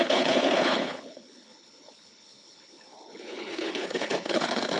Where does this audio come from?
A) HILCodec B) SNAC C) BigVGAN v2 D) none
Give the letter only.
A